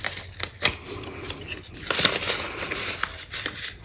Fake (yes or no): no